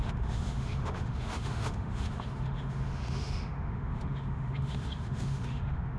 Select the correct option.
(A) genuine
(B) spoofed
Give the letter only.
B